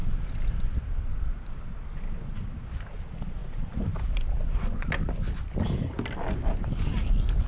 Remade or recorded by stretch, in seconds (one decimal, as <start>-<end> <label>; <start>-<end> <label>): 0.0-7.5 recorded

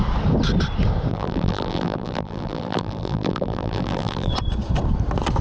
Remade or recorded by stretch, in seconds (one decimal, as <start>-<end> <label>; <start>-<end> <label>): 0.0-1.1 recorded; 1.1-4.3 remade; 4.3-5.4 recorded